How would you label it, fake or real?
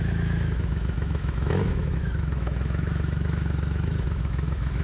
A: fake